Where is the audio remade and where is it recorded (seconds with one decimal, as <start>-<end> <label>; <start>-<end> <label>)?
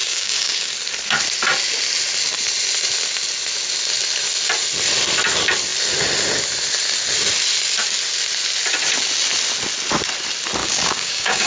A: 0.0-0.7 remade; 0.7-10.6 recorded; 10.6-11.5 remade